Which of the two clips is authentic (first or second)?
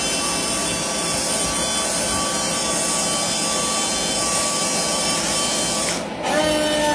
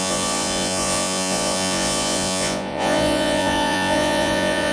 first